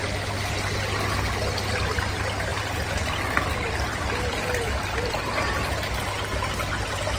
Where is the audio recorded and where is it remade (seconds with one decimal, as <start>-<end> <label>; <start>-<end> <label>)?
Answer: 0.0-7.2 recorded